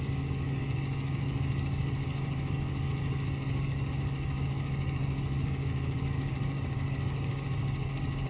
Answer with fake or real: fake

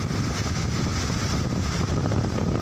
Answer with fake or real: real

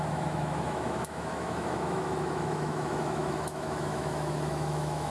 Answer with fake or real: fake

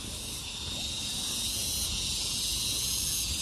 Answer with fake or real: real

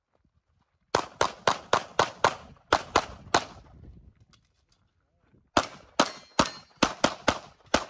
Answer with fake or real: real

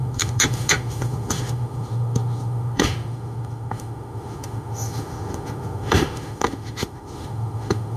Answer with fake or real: fake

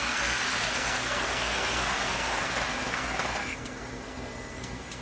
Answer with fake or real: fake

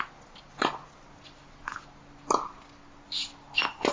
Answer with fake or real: real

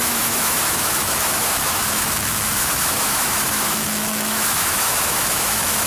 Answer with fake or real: fake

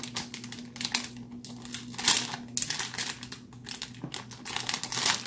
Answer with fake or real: real